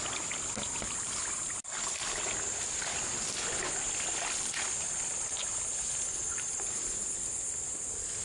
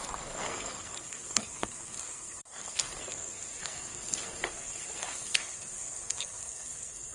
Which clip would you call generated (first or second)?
second